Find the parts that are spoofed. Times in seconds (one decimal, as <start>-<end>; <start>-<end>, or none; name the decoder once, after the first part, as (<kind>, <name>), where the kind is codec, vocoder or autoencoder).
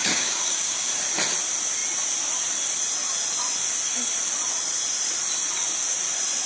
0.0-0.9 (codec, DAC)